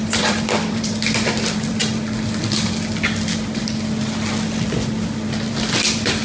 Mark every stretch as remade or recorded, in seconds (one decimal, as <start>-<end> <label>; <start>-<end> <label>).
0.0-1.8 remade; 1.8-5.5 recorded; 5.5-6.2 remade